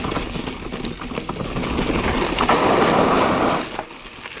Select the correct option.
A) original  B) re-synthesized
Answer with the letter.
A